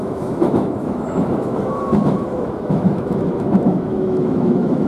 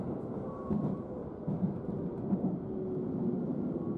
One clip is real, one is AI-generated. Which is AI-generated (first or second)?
first